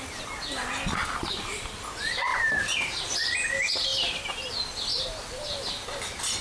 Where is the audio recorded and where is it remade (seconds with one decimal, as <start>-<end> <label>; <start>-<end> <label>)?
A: 0.0-2.3 recorded; 2.3-3.0 remade; 3.0-3.9 recorded; 3.9-4.5 remade; 4.5-4.9 recorded; 4.9-5.7 remade; 5.7-6.4 recorded